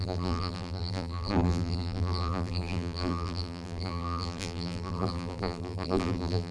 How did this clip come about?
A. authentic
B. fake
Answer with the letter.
B